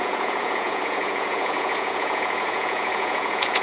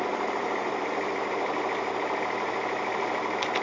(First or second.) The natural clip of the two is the second